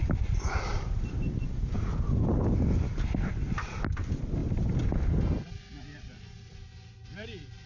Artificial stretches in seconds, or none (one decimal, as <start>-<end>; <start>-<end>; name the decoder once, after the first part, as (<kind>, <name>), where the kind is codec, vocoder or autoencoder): none